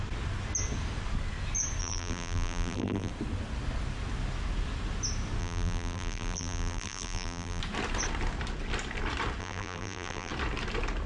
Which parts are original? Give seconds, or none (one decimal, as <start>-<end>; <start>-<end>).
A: 0.0-1.8; 3.1-5.4; 7.6-9.4; 10.3-11.1